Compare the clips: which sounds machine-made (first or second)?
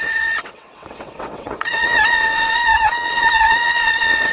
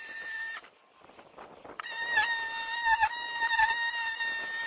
first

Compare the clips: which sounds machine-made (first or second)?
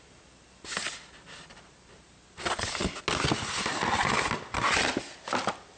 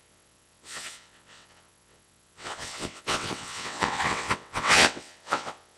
second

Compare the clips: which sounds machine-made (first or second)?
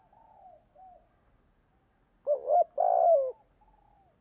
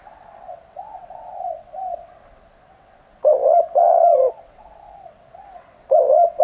second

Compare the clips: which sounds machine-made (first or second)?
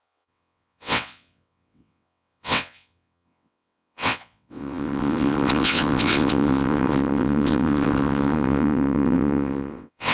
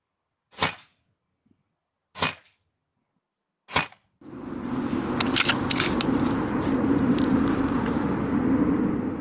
first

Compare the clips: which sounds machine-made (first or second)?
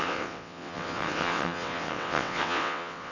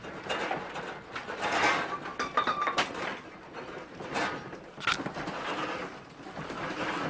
first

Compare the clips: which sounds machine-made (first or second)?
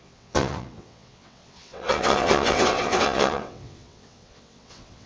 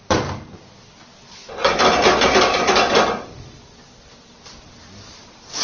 first